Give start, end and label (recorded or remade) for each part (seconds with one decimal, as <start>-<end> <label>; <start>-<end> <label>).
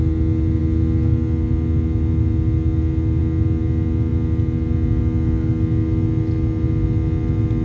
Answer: 0.0-7.6 recorded